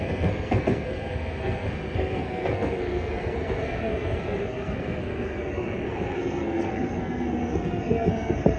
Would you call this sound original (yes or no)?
no